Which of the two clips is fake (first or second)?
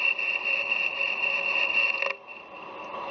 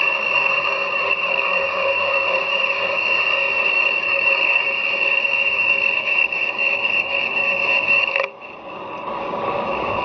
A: second